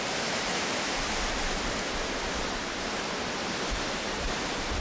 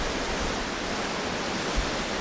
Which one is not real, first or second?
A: first